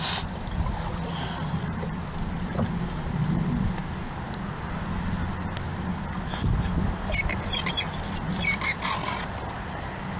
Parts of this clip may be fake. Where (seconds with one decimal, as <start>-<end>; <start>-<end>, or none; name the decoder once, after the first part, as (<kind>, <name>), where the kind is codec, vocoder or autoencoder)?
none